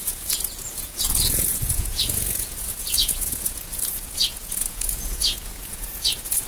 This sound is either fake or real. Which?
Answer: fake